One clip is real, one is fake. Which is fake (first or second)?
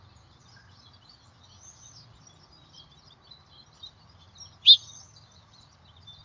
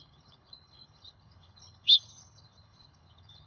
second